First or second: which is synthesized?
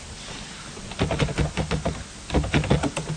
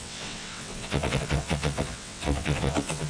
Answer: second